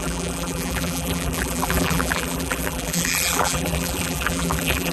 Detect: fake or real fake